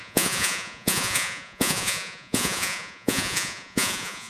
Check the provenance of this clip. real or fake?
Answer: fake